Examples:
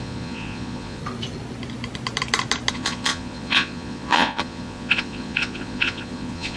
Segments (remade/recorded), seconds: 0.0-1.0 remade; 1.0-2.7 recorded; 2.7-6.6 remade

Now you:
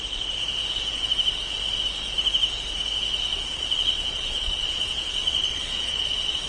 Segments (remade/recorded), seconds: 0.0-3.3 recorded; 3.3-6.5 remade

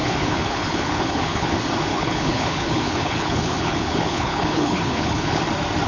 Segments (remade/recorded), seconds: 0.0-1.5 remade; 1.5-1.9 recorded; 1.9-5.4 remade; 5.4-5.9 recorded

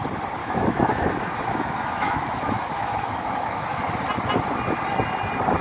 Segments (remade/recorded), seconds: 0.0-0.4 recorded; 0.4-3.8 remade; 3.8-5.6 recorded

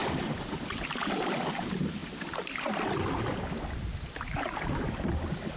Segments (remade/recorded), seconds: 0.0-1.4 remade; 1.4-2.0 recorded; 2.0-4.9 remade; 4.9-5.6 recorded